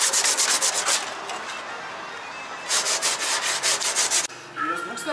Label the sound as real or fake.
real